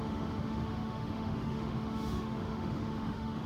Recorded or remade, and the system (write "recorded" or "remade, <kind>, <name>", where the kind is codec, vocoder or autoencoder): remade, autoencoder, DAC-VAE